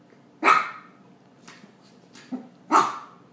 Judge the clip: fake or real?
real